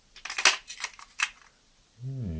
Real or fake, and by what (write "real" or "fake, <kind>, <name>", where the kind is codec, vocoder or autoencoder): real